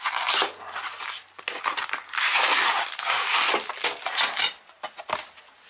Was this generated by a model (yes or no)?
no